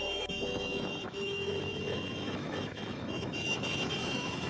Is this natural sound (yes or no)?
no